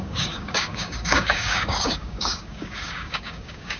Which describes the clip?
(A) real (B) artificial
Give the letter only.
B